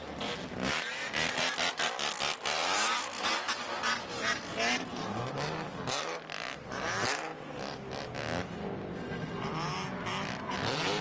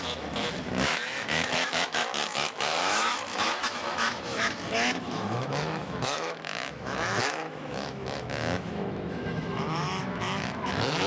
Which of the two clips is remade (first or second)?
second